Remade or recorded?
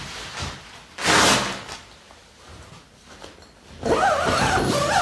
recorded